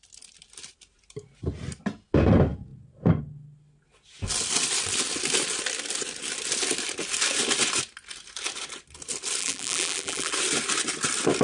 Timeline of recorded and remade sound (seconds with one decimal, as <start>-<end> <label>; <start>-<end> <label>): 0.0-9.4 recorded; 9.4-10.3 remade; 10.3-11.4 recorded